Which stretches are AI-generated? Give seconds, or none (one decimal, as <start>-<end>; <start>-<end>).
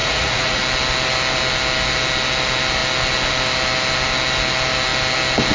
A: 0.0-0.6